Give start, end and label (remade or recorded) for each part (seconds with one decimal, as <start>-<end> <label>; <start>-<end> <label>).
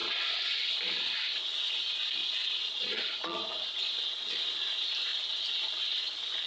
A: 0.0-0.7 remade; 0.7-2.2 recorded; 2.2-3.8 remade; 3.8-6.5 recorded